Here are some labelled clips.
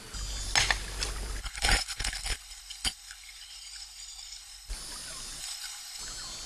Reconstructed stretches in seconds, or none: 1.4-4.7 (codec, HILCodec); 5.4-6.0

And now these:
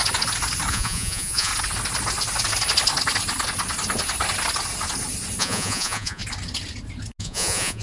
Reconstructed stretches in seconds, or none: 0.7-1.5 (vocoder, Vocos); 5.4-6.2; 7.2-7.8

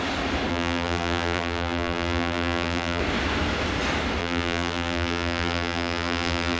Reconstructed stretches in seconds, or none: 0.5-3.0 (vocoder, BigVGAN v2); 4.2-6.6

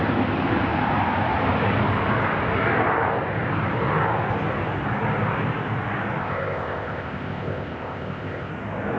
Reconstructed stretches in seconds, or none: 6.2-8.5 (codec, ZipCodec)